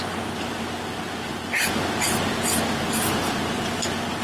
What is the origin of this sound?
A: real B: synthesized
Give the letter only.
B